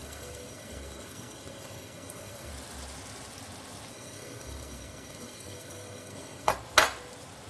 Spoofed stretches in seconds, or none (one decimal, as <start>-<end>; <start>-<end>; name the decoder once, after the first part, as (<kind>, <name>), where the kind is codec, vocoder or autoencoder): 0.0-2.5 (codec, SNAC); 3.9-6.5